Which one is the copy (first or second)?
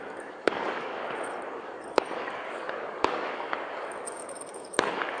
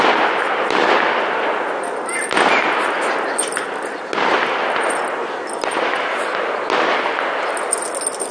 first